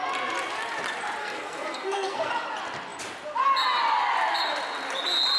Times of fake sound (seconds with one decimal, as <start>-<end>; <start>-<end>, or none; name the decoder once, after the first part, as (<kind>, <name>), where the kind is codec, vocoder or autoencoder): 1.2-2.3 (codec, SNAC)